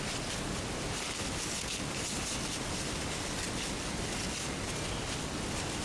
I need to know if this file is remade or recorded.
recorded